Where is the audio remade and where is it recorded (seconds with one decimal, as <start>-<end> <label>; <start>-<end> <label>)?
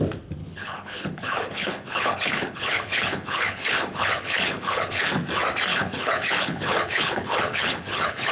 0.0-0.4 recorded; 0.4-5.1 remade; 5.1-5.7 recorded; 5.7-8.3 remade